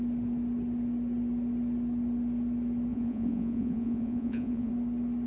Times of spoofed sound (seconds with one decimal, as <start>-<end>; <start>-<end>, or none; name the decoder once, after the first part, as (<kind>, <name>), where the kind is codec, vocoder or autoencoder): 2.9-4.7 (vocoder, Vocos)